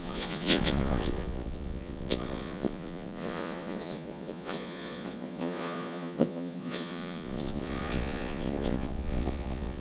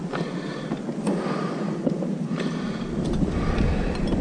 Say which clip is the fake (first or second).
first